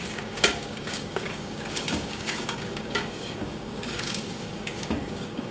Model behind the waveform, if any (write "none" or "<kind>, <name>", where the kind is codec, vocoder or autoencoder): codec, DAC